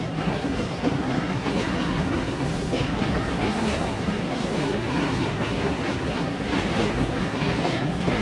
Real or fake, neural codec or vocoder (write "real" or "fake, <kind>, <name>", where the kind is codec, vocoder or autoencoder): fake, codec, SNAC